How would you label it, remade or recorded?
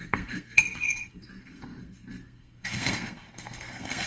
remade